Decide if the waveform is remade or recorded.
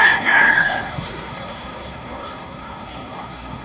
remade